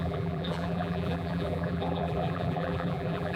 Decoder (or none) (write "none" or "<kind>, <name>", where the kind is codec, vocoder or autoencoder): vocoder, BigVGAN v2